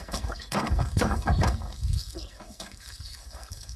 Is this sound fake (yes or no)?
yes